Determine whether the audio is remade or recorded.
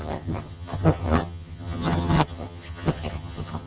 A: remade